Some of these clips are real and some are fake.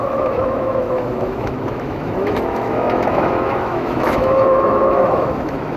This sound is fake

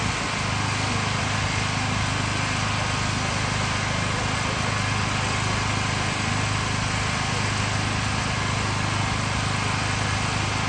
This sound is real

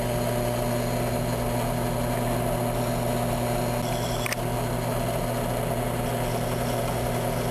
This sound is real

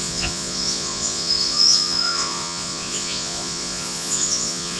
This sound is fake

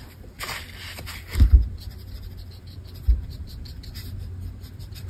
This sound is fake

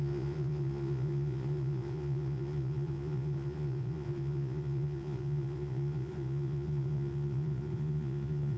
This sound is fake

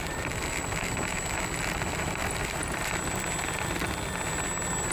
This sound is real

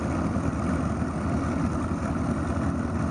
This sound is real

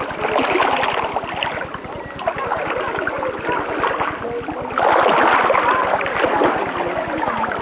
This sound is real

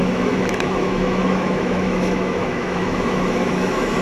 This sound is fake